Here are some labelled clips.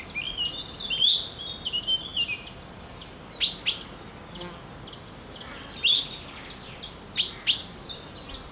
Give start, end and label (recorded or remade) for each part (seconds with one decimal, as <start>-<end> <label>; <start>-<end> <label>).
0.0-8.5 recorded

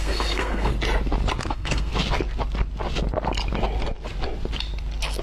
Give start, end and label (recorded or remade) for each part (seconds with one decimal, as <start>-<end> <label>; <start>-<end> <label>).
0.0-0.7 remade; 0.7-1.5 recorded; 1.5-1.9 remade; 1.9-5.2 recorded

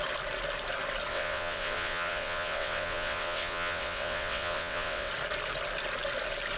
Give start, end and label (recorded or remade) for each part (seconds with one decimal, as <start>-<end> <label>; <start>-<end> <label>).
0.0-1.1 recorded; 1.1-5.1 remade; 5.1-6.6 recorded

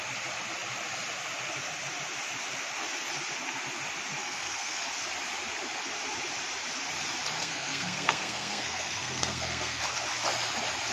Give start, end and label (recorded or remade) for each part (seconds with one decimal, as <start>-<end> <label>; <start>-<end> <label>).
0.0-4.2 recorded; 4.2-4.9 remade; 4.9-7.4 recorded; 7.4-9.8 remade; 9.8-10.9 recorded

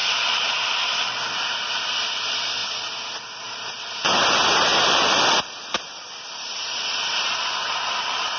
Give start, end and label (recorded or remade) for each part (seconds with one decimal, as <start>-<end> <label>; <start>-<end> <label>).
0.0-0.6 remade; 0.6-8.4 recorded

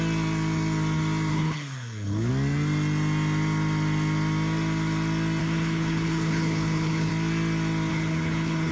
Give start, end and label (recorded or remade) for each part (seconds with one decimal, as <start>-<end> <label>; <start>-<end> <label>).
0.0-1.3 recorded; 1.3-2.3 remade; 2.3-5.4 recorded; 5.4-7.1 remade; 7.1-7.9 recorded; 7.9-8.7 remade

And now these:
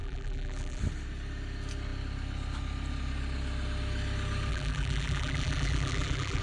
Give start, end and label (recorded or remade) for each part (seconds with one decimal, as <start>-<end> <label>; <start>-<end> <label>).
0.0-0.8 remade; 0.8-4.5 recorded; 4.5-6.4 remade

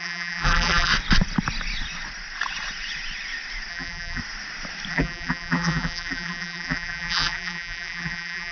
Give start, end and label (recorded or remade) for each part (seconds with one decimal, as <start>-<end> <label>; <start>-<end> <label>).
0.0-0.9 remade; 0.9-3.7 recorded; 3.7-4.2 remade; 4.2-4.9 recorded; 4.9-8.5 remade